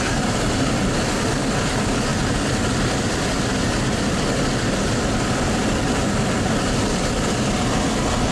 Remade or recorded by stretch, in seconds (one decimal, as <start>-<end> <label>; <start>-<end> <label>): 0.0-8.3 recorded